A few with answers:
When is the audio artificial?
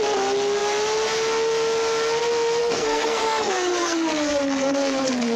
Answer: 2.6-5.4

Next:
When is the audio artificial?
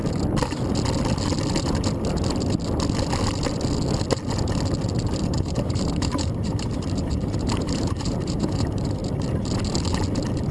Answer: 5.2-9.0